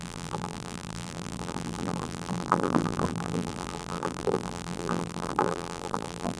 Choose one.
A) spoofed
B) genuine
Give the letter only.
A